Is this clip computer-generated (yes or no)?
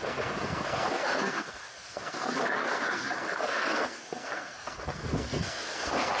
yes